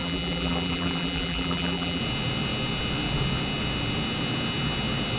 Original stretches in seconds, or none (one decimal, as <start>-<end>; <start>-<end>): 2.0-5.2